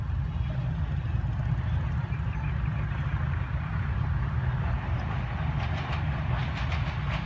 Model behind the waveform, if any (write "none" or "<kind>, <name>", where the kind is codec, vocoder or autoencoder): none